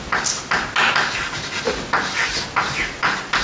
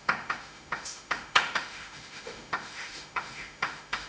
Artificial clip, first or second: second